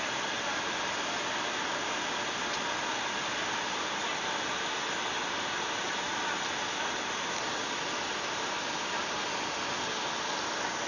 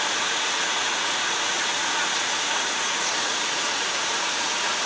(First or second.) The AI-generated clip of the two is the second